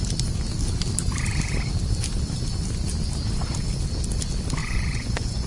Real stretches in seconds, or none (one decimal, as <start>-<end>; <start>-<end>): 0.0-4.6